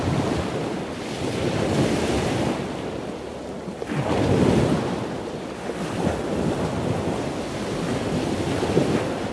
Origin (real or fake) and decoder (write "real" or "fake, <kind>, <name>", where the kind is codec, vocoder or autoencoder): real